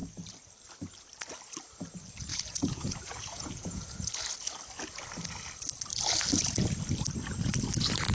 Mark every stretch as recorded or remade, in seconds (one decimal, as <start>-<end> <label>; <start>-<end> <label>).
0.0-2.3 recorded; 2.3-4.1 remade; 4.1-8.1 recorded